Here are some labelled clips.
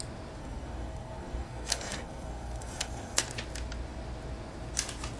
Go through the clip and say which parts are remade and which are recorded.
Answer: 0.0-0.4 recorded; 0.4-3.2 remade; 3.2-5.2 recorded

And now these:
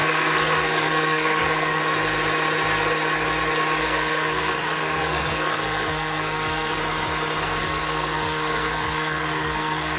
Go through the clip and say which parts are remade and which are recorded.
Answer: 0.0-1.8 remade; 1.8-3.8 recorded; 3.8-6.8 remade; 6.8-7.4 recorded; 7.4-10.0 remade

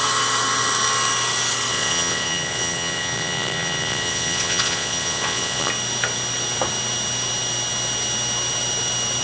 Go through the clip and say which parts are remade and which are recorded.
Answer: 0.0-1.7 recorded; 1.7-5.7 remade; 5.7-9.2 recorded

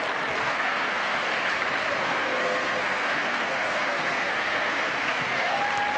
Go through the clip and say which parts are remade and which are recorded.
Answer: 0.0-0.4 recorded; 0.4-1.3 remade; 1.3-2.0 recorded; 2.0-5.6 remade; 5.6-6.0 recorded

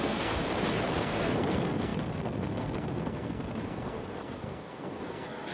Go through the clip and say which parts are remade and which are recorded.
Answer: 0.0-0.4 remade; 0.4-1.0 recorded; 1.0-5.5 remade